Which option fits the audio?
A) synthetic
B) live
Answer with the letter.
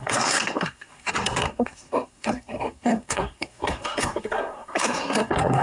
A